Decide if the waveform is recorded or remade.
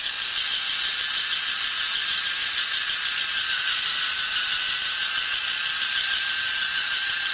recorded